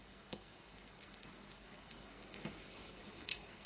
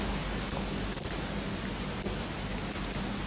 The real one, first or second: second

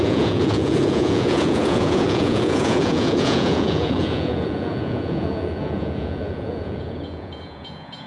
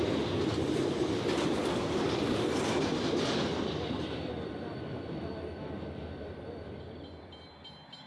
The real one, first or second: second